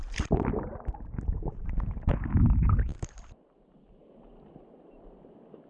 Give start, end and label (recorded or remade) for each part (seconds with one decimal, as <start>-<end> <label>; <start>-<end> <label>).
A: 0.0-5.7 recorded